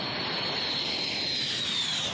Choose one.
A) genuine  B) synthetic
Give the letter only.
A